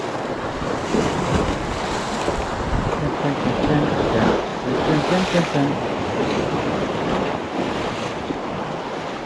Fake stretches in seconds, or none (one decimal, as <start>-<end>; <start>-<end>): none